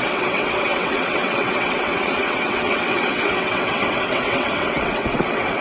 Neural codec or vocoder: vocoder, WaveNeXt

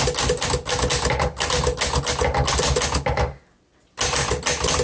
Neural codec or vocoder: none